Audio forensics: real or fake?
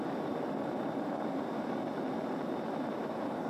fake